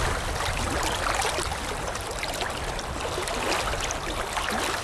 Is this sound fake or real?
real